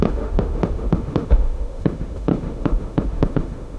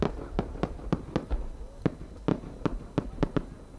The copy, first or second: first